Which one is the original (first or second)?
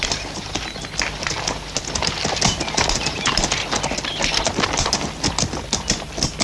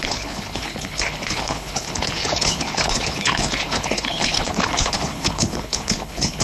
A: first